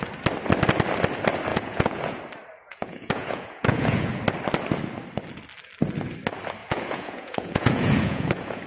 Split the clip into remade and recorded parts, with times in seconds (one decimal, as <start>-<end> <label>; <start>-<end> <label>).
0.0-1.5 recorded; 1.5-2.2 remade; 2.2-2.7 recorded; 2.7-4.2 remade; 4.2-6.6 recorded; 6.6-8.7 remade